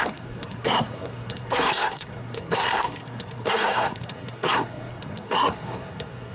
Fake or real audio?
fake